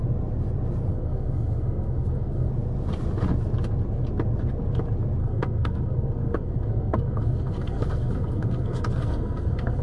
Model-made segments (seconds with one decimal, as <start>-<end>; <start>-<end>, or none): 0.9-2.5; 5.2-9.8